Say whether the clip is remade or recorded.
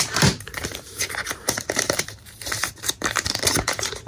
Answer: remade